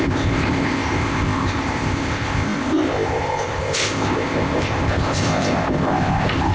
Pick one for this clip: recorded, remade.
remade